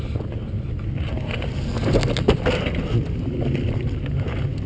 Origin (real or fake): real